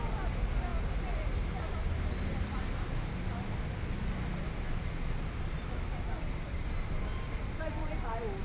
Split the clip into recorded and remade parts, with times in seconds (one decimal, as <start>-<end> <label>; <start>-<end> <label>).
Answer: 0.0-8.4 recorded

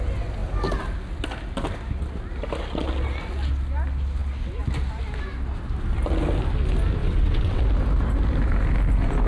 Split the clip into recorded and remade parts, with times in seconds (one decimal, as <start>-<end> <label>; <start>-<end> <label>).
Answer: 0.0-7.0 recorded; 7.0-7.6 remade; 7.6-9.3 recorded

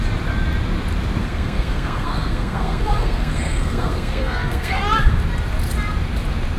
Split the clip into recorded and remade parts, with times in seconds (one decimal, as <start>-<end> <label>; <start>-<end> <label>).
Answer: 0.0-1.2 recorded; 1.2-5.2 remade; 5.2-6.6 recorded